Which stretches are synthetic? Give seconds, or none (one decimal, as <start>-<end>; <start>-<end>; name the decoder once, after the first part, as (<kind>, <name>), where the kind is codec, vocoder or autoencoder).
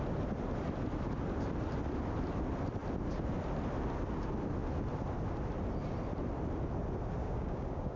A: 7.2-8.0 (codec, DAC)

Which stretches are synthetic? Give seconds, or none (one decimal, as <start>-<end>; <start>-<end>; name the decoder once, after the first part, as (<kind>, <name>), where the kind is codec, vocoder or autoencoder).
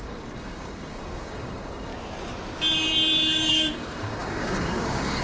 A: 0.0-1.9 (codec, DAC); 3.5-5.2